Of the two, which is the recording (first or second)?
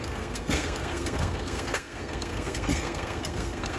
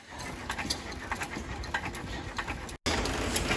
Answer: second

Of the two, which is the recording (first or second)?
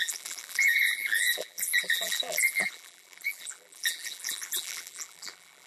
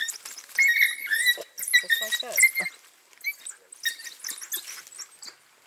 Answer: second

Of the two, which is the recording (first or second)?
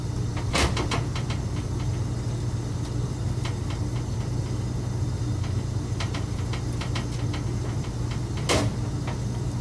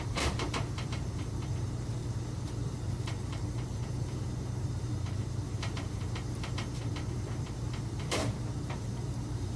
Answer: first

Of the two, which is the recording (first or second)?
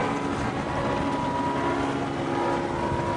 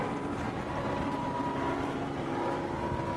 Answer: first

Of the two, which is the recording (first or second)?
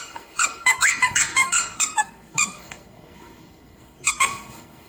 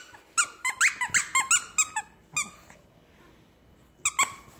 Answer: second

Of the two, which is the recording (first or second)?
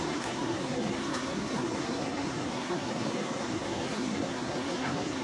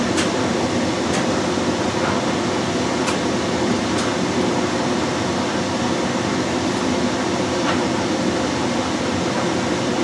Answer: second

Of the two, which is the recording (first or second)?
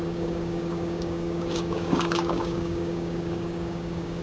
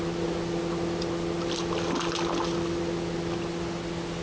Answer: second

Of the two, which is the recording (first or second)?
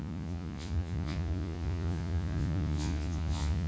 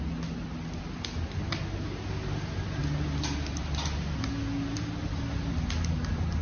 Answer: second